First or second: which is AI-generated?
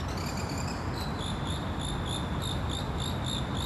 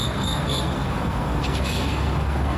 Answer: second